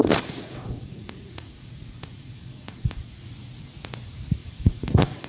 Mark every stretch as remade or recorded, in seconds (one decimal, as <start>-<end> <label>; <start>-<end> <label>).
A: 0.0-3.2 remade; 3.2-4.4 recorded; 4.4-5.3 remade